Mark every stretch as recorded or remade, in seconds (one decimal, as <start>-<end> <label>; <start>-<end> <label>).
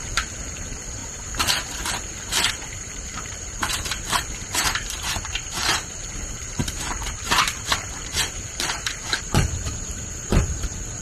0.0-1.0 remade; 1.0-2.5 recorded; 2.5-11.0 remade